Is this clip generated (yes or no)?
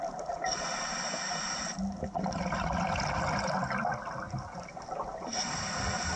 no